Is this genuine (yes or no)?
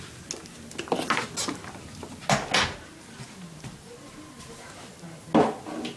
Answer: yes